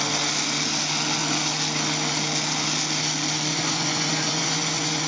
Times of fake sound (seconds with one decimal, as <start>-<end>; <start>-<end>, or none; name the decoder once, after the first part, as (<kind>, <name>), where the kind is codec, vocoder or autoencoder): 3.5-5.1 (vocoder, Vocos)